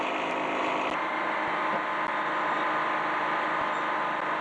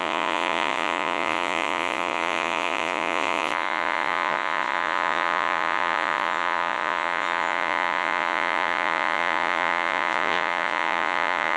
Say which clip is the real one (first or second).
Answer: first